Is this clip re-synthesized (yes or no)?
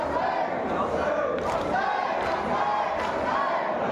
yes